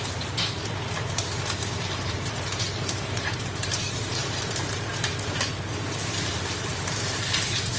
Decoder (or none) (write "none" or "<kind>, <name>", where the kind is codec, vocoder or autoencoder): vocoder, BigVGAN v2